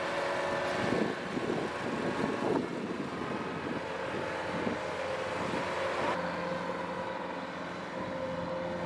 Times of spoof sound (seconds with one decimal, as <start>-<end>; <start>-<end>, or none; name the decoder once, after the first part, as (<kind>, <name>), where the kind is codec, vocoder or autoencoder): none